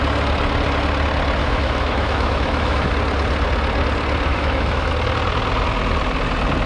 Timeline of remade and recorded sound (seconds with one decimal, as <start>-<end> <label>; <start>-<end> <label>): 0.0-1.4 recorded; 1.4-2.9 remade; 2.9-4.3 recorded; 4.3-4.9 remade; 4.9-6.7 recorded